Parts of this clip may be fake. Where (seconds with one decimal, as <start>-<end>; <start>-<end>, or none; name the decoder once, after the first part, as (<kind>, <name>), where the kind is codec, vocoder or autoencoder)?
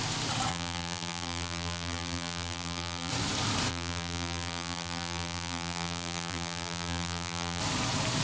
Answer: 0.5-3.1 (vocoder, BigVGAN v2); 3.7-7.6